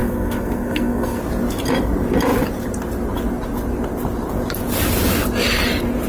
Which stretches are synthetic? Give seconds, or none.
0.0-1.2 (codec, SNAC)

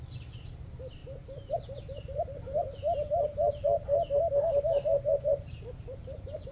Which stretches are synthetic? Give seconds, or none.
0.0-1.0 (vocoder, BigVGAN v2); 3.1-3.7; 6.0-6.5